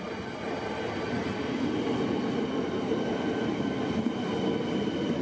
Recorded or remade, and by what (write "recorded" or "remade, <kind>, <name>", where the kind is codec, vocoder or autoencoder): recorded